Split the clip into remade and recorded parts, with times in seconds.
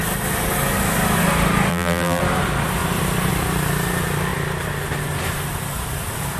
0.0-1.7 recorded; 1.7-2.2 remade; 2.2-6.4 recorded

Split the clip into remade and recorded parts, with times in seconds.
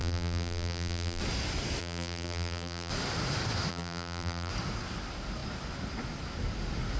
0.0-1.2 remade; 1.2-1.8 recorded; 1.8-2.9 remade; 2.9-3.7 recorded; 3.7-4.5 remade; 4.5-7.0 recorded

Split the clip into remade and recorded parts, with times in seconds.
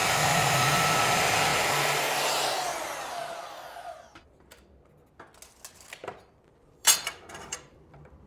0.0-1.0 remade; 1.0-6.0 recorded; 6.0-8.3 remade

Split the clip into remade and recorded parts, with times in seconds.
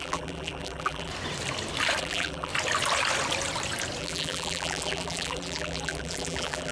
0.0-1.1 remade; 1.1-2.0 recorded; 2.0-2.5 remade; 2.5-4.0 recorded; 4.0-6.7 remade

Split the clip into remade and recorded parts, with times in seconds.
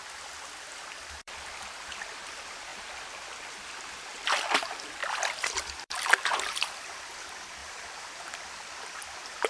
0.0-0.5 recorded; 0.5-2.7 remade; 2.7-3.8 recorded; 3.8-7.6 remade; 7.6-8.2 recorded; 8.2-9.5 remade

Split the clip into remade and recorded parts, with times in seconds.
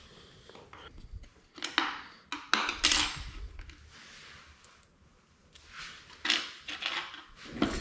0.0-7.8 recorded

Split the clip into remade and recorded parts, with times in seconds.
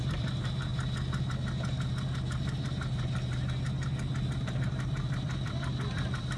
0.0-0.7 remade; 0.7-4.5 recorded; 4.5-6.4 remade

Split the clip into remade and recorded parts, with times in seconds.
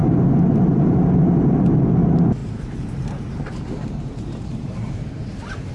0.0-2.4 recorded; 2.4-5.7 remade